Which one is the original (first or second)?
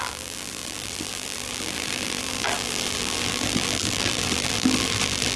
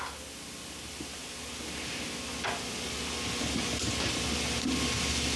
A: second